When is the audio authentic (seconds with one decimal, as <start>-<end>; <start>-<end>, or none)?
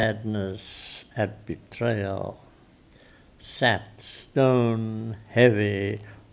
0.0-6.3